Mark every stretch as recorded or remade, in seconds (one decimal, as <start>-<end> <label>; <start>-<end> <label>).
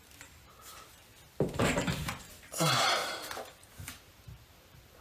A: 0.0-1.1 remade; 1.1-2.3 recorded; 2.3-3.0 remade; 3.0-3.7 recorded; 3.7-5.0 remade